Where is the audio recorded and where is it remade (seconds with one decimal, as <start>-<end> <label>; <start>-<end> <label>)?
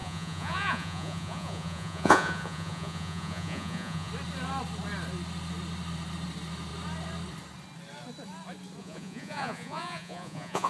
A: 0.0-4.1 remade; 4.1-8.8 recorded; 8.8-10.7 remade